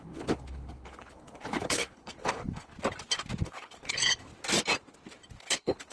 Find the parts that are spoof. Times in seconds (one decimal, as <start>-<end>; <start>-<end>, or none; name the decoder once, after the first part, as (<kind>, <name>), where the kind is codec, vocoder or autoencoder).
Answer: 0.0-2.7 (codec, HILCodec); 3.4-4.3; 5.4-5.9

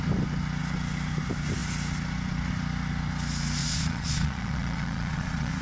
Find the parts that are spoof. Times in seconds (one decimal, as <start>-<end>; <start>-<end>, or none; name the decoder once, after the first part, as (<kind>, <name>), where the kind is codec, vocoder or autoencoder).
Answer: 3.6-5.6 (vocoder, Vocos)

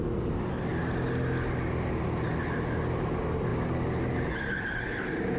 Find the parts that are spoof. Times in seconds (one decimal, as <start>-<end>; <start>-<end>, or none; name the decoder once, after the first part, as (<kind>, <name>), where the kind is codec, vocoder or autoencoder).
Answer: none